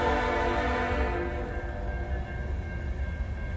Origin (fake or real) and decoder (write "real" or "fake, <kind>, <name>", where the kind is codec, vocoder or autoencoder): real